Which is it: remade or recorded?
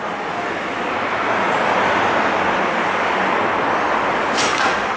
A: recorded